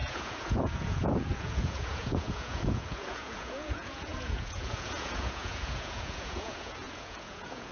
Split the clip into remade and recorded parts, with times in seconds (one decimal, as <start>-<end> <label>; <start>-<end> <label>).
0.0-7.7 remade

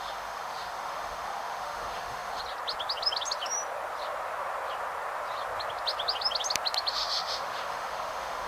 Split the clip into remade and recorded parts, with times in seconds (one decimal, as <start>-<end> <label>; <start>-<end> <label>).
0.0-2.4 remade; 2.4-6.9 recorded; 6.9-8.5 remade

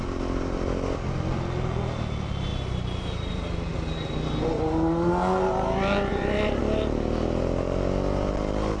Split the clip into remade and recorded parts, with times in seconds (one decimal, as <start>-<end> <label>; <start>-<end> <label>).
0.0-2.5 recorded; 2.5-3.4 remade; 3.4-6.1 recorded; 6.1-6.6 remade; 6.6-8.8 recorded

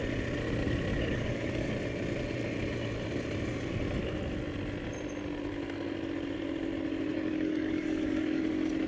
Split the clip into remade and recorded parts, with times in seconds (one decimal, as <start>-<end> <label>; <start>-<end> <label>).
0.0-0.9 recorded; 0.9-1.7 remade; 1.7-7.1 recorded; 7.1-8.4 remade; 8.4-8.9 recorded

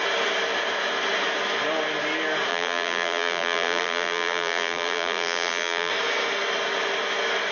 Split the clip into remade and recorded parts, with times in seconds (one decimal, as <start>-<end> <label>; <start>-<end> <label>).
0.0-2.5 recorded; 2.5-5.9 remade; 5.9-7.5 recorded

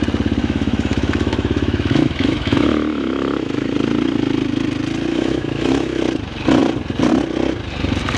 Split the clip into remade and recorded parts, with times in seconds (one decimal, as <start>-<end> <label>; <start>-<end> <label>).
0.0-0.4 recorded; 0.4-3.7 remade; 3.7-5.1 recorded; 5.1-6.0 remade; 6.0-8.2 recorded

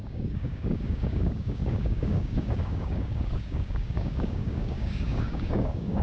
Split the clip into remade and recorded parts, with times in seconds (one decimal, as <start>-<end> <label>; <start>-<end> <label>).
0.0-6.0 remade

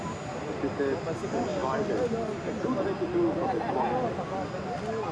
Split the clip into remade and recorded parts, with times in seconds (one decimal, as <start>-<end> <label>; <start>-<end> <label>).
0.0-5.1 recorded